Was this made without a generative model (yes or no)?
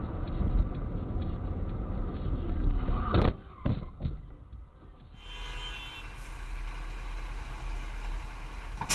yes